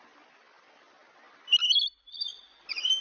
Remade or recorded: recorded